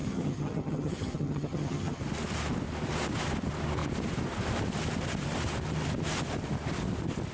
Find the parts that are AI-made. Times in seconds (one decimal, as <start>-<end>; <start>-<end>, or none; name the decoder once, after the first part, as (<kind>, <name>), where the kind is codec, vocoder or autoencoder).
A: 0.0-2.0 (vocoder, HiFi-GAN)